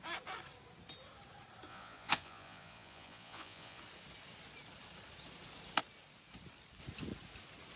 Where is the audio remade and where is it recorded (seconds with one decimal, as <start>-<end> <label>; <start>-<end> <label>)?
0.0-1.7 recorded; 1.7-3.8 remade; 3.8-7.8 recorded